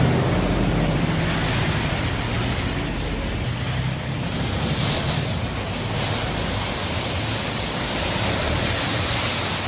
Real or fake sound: real